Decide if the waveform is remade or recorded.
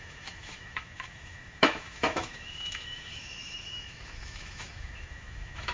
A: remade